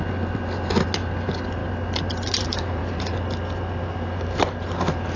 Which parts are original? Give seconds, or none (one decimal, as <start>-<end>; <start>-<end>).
0.0-5.2